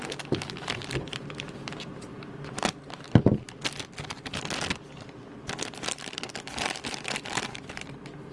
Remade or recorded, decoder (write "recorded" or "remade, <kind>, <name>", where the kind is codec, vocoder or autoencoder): recorded